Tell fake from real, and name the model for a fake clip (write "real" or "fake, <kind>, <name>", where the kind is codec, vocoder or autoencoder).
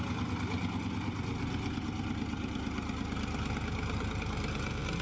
real